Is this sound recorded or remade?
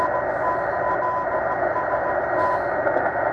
recorded